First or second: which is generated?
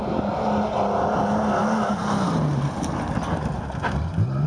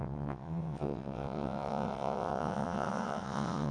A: second